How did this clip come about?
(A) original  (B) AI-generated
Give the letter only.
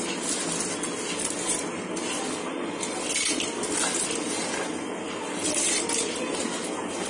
A